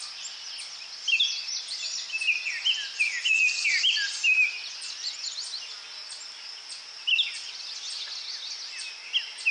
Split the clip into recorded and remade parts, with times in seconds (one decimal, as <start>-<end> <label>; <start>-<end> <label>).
0.0-9.5 recorded

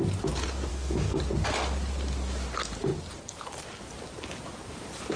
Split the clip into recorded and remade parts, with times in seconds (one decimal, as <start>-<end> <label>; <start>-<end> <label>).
0.0-0.7 recorded; 0.7-1.2 remade; 1.2-5.2 recorded

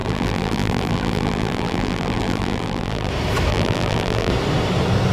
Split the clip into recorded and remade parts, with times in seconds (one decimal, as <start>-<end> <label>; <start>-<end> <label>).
0.0-3.1 remade; 3.1-3.5 recorded; 3.5-4.3 remade; 4.3-5.1 recorded